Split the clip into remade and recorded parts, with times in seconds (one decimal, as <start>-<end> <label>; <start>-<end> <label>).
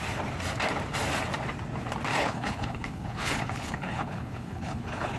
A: 0.0-2.1 recorded; 2.1-5.2 remade